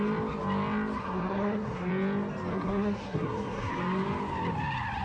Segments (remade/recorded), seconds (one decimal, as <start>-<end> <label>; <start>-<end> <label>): 0.0-1.0 recorded; 1.0-1.9 remade; 1.9-2.5 recorded; 2.5-3.7 remade; 3.7-5.0 recorded

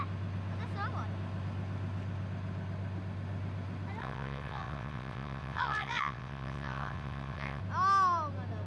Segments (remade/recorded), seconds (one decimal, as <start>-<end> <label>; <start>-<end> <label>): 0.0-4.0 recorded; 4.0-7.6 remade; 7.6-8.7 recorded

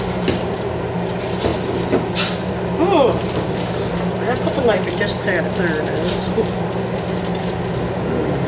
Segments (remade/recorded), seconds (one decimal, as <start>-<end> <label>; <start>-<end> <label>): 0.0-8.5 recorded